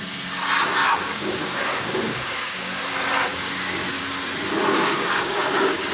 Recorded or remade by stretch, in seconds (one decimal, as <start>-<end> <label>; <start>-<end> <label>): 0.0-0.8 recorded; 0.8-2.8 remade; 2.8-3.3 recorded; 3.3-4.0 remade; 4.0-4.7 recorded; 4.7-5.9 remade